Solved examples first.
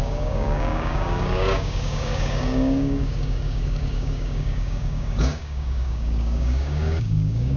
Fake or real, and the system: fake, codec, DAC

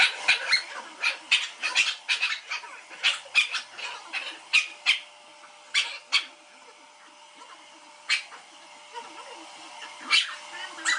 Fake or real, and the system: real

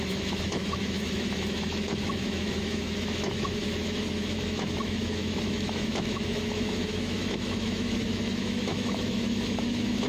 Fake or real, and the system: fake, autoencoder, DAC-VAE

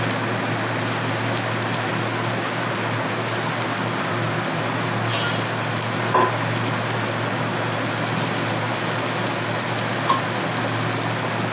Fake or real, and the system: real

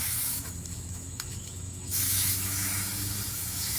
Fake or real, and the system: fake, autoencoder, DAC-VAE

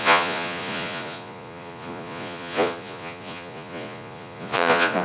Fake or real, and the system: fake, vocoder, Vocos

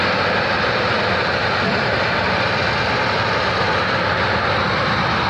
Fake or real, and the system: real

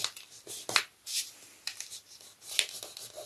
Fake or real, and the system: real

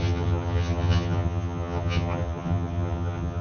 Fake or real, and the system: fake, vocoder, HiFi-GAN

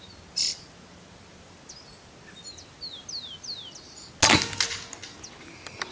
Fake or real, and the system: real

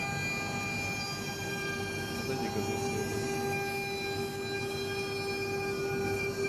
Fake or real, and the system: real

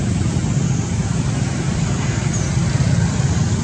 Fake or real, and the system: real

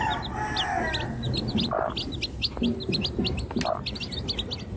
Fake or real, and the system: real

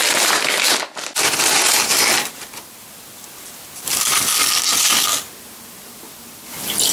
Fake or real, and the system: real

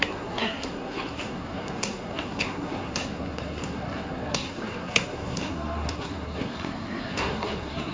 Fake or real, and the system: fake, codec, SNAC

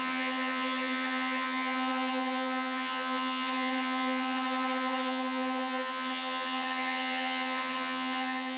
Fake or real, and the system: fake, vocoder, HiFi-GAN